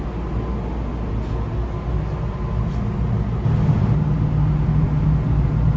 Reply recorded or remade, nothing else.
recorded